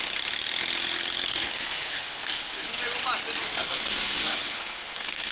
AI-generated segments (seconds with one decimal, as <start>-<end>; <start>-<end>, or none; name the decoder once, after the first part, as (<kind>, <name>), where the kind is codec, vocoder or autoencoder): 1.3-2.8 (codec, SNAC); 3.4-5.3